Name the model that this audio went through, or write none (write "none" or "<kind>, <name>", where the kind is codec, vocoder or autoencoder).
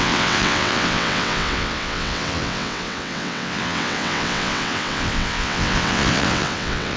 vocoder, WaveNeXt